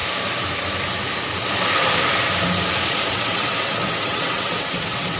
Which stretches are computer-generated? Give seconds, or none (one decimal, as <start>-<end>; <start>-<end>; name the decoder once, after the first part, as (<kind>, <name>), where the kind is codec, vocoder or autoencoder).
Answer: 3.1-5.2 (vocoder, WaveNeXt)

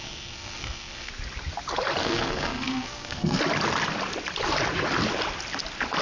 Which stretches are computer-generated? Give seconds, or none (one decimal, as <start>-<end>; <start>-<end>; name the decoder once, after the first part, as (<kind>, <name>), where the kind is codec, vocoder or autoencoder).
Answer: 0.0-1.1 (codec, SNAC); 2.0-3.4

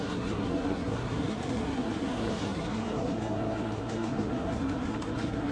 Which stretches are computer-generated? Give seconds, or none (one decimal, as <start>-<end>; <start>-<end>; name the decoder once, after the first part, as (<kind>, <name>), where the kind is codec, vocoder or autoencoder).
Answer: 0.0-5.5 (codec, SNAC)

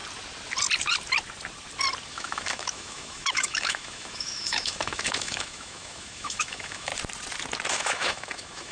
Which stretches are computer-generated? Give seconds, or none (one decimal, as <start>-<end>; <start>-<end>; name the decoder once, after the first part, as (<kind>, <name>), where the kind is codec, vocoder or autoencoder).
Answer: 2.1-6.9 (autoencoder, DAC-VAE); 7.7-8.7

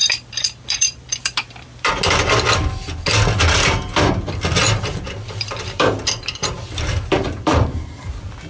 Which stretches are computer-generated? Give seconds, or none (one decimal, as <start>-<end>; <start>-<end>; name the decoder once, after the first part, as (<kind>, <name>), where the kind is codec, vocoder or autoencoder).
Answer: 0.0-1.9 (vocoder, BigVGAN v2); 4.6-8.0

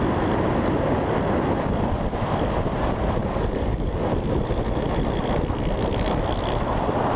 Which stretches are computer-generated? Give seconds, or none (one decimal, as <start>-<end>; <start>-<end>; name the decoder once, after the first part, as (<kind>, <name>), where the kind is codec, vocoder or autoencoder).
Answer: 3.2-4.1 (codec, DAC)